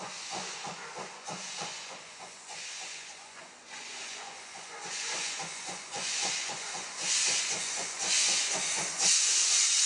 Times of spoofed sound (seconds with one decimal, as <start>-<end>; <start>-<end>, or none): 0.0-9.9